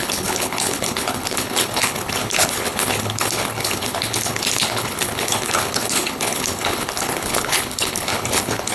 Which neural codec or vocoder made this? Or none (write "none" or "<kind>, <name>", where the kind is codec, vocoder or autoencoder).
codec, HILCodec